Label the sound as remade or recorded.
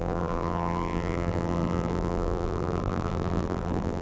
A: remade